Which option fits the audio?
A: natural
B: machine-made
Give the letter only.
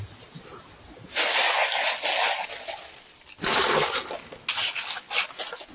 A